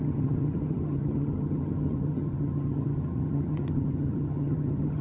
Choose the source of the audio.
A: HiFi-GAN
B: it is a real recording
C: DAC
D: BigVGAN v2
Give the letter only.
A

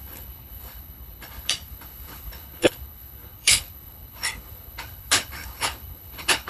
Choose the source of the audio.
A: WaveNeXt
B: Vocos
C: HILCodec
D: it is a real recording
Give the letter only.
C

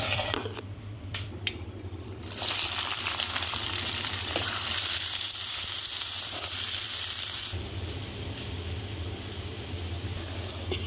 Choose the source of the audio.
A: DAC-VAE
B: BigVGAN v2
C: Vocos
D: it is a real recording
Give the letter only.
B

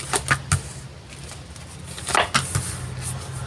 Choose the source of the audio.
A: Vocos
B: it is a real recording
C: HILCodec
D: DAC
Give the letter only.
B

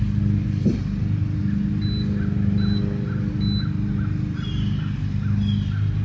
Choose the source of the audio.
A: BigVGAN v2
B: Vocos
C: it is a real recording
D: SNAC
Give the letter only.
C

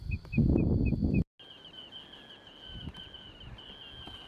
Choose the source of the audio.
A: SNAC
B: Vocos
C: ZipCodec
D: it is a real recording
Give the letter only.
D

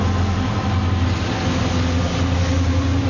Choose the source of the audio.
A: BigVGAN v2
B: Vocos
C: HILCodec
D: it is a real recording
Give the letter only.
D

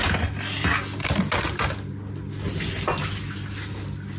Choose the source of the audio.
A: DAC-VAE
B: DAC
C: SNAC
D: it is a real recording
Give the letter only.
D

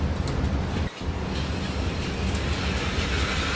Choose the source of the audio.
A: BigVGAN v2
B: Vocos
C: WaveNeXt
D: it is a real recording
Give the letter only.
D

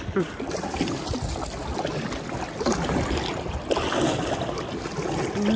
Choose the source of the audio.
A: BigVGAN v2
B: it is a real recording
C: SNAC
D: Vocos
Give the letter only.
B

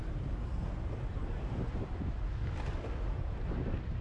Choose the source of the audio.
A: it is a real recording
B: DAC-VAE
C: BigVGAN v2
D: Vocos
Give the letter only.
C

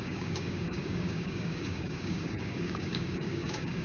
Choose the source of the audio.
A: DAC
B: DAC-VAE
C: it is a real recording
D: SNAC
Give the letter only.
A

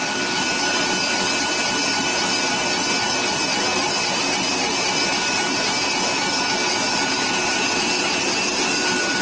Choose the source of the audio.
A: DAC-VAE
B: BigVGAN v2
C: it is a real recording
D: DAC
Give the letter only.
C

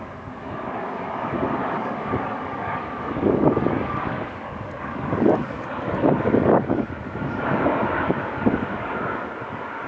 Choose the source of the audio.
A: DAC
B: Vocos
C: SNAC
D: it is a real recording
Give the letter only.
A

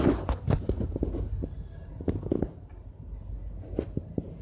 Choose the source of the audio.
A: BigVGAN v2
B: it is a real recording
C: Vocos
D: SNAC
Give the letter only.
B